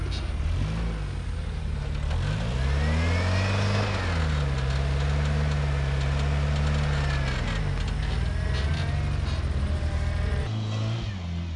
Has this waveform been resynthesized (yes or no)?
no